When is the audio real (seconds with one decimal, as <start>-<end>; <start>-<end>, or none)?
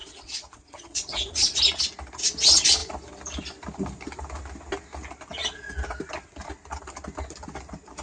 1.6-8.0